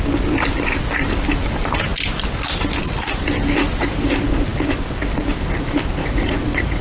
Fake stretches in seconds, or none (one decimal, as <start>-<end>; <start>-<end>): 6.0-6.8